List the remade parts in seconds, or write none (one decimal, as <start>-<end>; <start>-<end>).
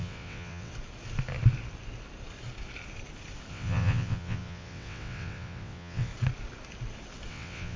0.0-0.7; 3.5-6.1; 7.3-7.8